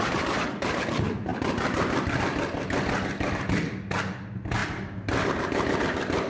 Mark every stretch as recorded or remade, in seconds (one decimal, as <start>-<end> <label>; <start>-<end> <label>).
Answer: 0.0-6.3 recorded